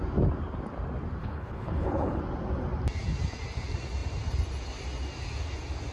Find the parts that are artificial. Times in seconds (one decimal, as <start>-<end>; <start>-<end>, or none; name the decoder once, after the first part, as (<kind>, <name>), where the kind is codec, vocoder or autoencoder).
1.2-2.2 (codec, HILCodec)